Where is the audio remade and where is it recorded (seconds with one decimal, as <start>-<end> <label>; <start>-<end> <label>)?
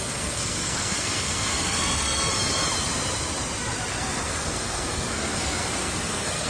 0.0-2.3 remade; 2.3-3.9 recorded; 3.9-6.5 remade